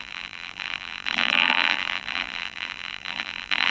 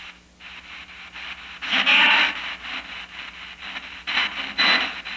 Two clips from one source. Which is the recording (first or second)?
second